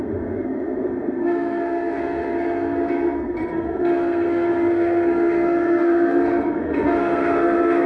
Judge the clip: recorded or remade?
remade